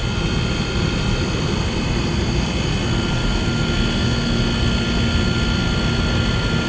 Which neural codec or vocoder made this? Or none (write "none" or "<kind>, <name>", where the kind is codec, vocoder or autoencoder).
none